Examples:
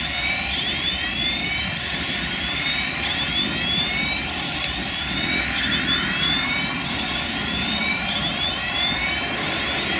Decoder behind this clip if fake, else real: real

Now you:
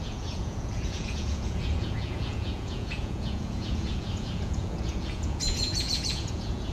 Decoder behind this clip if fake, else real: fake, vocoder, Vocos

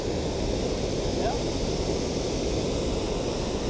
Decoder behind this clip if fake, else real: real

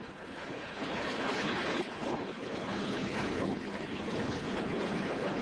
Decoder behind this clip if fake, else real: fake, codec, HILCodec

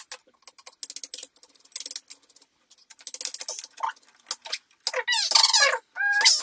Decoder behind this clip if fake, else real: real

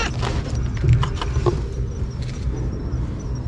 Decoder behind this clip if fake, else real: real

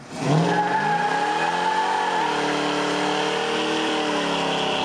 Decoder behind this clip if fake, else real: real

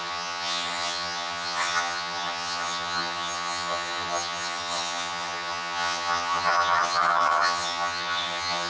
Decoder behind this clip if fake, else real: fake, vocoder, HiFi-GAN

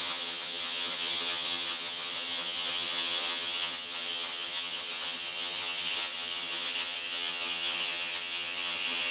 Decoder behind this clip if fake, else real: fake, vocoder, HiFi-GAN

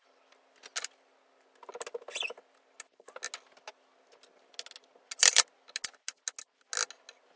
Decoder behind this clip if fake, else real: real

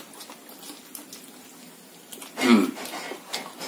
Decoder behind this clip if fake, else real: real